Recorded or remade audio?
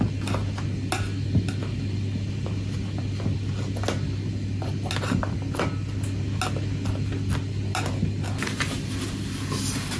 recorded